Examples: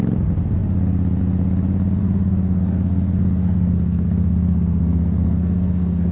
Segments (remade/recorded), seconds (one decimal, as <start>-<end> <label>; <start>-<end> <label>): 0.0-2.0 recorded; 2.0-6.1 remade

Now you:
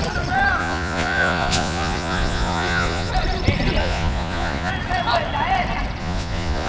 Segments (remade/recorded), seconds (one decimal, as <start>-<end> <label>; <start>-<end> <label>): 0.0-0.6 recorded; 0.6-3.1 remade; 3.1-3.8 recorded; 3.8-4.7 remade; 4.7-6.0 recorded; 6.0-6.7 remade

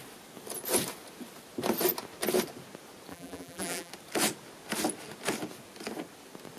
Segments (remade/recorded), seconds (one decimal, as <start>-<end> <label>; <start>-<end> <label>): 0.0-3.1 recorded; 3.1-3.9 remade; 3.9-6.6 recorded

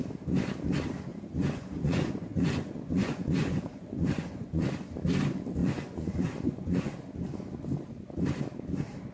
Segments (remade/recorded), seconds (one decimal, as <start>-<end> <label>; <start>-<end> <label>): 0.0-1.1 recorded; 1.1-4.7 remade; 4.7-5.6 recorded; 5.6-7.1 remade; 7.1-9.1 recorded

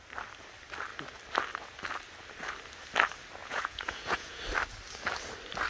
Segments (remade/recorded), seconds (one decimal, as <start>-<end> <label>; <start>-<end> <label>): 0.0-3.4 recorded; 3.4-4.4 remade; 4.4-5.7 recorded